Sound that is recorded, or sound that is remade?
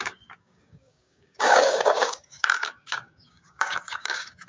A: remade